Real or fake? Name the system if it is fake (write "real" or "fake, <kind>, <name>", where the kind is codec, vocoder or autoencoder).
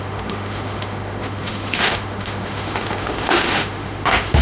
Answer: fake, autoencoder, DAC-VAE